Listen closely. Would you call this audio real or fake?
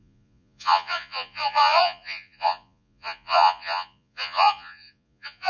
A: fake